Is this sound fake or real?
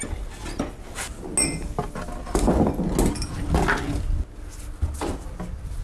real